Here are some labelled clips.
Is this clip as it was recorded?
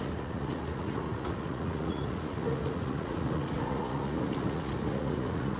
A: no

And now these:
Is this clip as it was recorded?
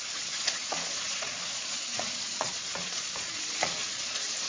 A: no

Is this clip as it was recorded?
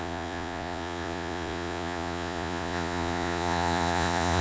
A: no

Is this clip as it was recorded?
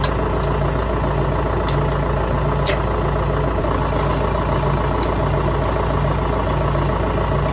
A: yes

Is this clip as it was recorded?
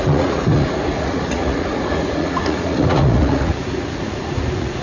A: no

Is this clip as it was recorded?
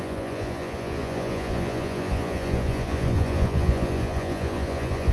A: no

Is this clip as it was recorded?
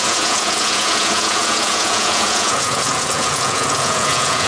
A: no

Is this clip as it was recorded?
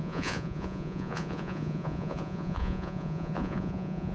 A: no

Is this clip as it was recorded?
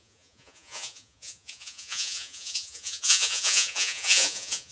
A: no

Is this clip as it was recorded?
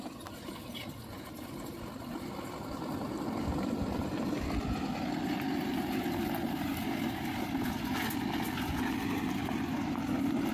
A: yes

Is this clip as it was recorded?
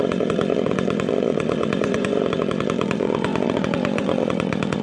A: no